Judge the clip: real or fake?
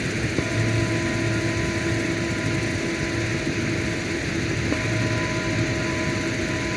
real